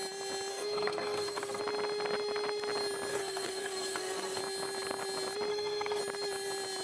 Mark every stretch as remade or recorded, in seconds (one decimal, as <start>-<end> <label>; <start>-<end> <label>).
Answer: 0.0-0.5 recorded; 0.5-1.6 remade; 1.6-3.1 recorded; 3.1-4.4 remade; 4.4-5.5 recorded; 5.5-6.0 remade; 6.0-6.8 recorded